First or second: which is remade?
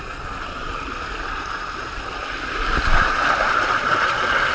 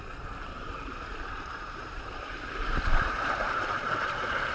second